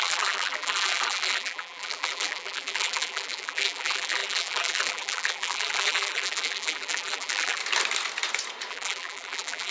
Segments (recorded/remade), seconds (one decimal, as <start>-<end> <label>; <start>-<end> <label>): 0.0-7.6 remade; 7.6-8.7 recorded; 8.7-9.7 remade